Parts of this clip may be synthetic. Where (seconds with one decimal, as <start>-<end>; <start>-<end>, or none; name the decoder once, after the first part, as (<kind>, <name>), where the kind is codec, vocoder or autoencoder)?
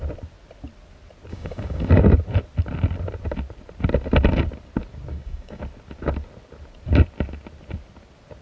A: 1.3-1.9 (codec, DAC); 5.1-5.6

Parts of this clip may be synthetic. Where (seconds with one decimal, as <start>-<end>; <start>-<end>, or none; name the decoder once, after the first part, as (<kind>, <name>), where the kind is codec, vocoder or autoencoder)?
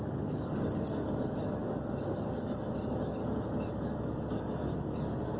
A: 0.0-3.2 (codec, DAC); 3.7-5.4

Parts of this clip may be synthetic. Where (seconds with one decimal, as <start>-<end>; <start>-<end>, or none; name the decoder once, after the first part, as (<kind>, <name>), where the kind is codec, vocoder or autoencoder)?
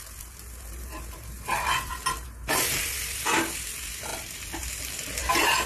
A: none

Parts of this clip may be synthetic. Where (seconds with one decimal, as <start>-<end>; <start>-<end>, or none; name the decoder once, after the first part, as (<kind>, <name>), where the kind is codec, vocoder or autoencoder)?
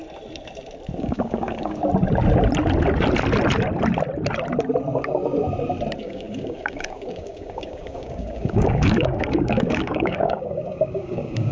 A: 1.0-1.8 (codec, DAC); 6.0-11.5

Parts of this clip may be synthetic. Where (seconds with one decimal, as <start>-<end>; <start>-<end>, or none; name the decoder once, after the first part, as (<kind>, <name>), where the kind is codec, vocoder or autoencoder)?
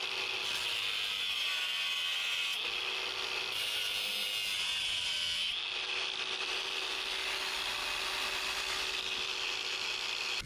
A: none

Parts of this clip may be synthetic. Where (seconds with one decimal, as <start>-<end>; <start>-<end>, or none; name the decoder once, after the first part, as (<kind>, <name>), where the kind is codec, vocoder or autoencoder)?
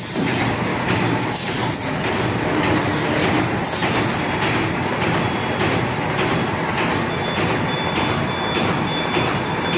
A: 0.7-1.5 (codec, DAC)